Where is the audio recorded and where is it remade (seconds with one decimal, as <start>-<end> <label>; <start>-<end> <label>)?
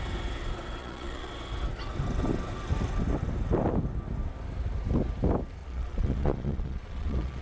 0.0-0.8 recorded; 0.8-1.3 remade; 1.3-5.6 recorded; 5.6-7.4 remade